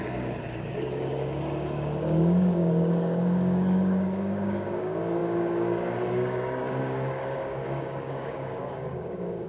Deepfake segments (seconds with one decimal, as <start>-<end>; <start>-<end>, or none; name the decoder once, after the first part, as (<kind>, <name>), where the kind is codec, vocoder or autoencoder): 0.0-9.5 (codec, DAC)